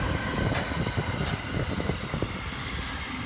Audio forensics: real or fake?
real